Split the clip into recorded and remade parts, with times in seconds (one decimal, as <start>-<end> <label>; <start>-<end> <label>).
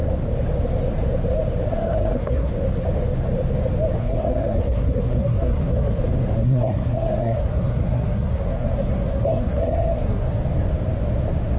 0.0-1.7 recorded; 1.7-2.5 remade; 2.5-4.0 recorded; 4.0-6.0 remade; 6.0-6.4 recorded; 6.4-10.4 remade; 10.4-11.6 recorded